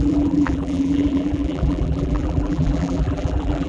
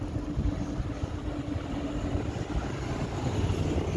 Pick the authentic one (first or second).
second